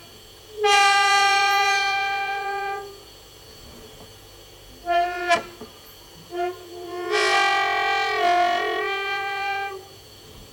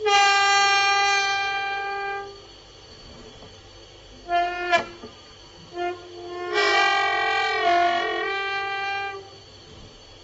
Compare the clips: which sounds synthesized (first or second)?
first